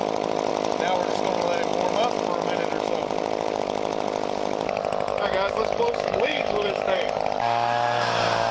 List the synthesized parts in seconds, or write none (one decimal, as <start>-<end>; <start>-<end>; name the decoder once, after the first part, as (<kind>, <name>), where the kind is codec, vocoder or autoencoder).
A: 5.1-7.2 (codec, DAC)